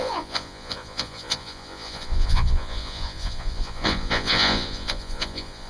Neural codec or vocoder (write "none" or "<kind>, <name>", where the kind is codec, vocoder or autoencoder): vocoder, Vocos